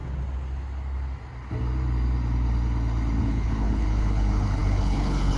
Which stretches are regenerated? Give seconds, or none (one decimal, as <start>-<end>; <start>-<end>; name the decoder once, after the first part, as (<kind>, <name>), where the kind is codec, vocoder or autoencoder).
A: 3.2-5.4 (codec, HILCodec)